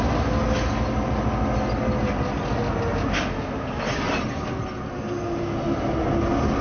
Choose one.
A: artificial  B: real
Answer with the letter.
B